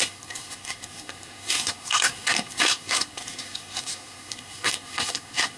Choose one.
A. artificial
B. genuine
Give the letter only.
A